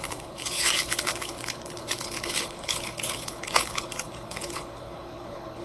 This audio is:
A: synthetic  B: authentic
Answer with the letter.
A